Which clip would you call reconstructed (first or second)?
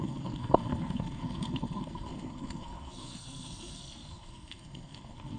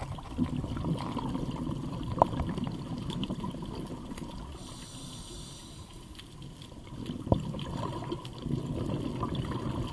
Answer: first